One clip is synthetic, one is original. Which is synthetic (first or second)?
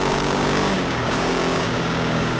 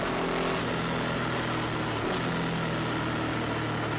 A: first